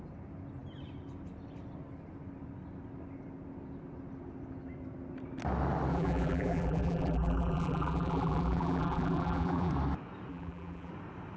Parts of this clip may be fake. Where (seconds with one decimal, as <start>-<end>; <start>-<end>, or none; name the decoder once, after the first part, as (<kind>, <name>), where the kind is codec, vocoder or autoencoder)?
5.9-9.7 (vocoder, BigVGAN v2); 10.3-10.9